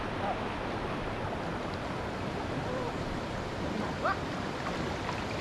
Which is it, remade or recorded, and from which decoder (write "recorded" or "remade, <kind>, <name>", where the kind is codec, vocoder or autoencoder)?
recorded